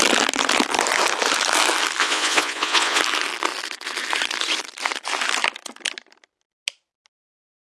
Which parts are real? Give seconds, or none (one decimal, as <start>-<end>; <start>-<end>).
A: 0.0-2.0; 3.0-7.7